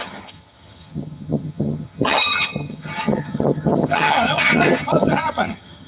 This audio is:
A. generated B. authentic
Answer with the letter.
A